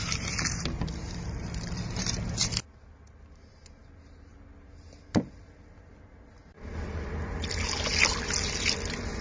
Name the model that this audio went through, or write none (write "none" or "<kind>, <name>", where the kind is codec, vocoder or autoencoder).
none